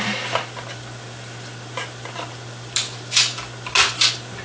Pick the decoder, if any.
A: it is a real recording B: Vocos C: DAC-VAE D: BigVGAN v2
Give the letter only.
A